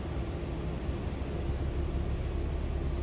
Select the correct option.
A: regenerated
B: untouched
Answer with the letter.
B